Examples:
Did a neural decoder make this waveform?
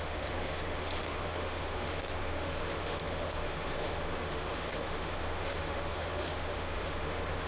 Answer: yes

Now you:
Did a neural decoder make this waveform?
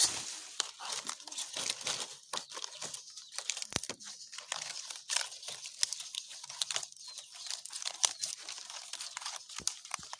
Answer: no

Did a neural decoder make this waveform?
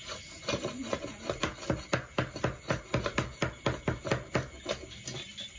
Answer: no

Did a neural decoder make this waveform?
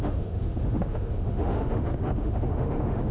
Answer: yes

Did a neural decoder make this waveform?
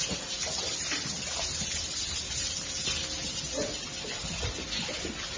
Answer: no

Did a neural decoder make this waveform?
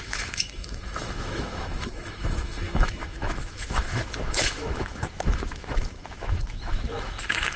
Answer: yes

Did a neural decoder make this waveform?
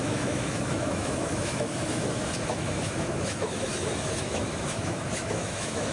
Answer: yes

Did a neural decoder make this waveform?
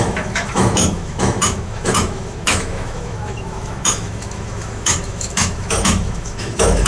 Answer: yes